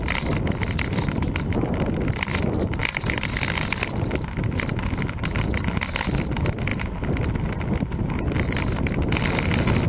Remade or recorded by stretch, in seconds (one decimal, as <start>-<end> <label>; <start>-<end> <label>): 0.0-9.9 recorded